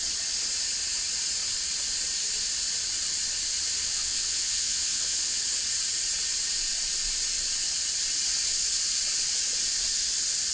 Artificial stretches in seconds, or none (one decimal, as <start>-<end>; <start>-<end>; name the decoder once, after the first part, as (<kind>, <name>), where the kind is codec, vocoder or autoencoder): 3.8-5.4 (vocoder, Vocos)